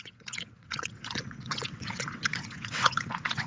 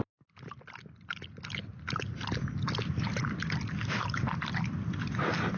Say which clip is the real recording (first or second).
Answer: second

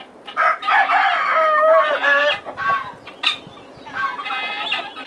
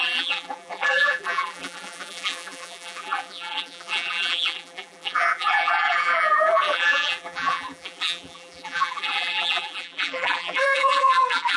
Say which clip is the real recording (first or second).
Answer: first